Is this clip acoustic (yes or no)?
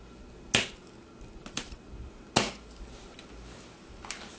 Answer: yes